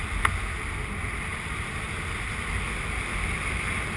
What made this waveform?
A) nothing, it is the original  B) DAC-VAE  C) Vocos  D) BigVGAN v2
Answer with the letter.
A